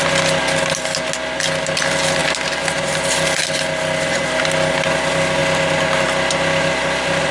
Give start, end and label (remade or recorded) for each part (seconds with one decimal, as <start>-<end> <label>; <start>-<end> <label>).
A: 0.0-7.3 recorded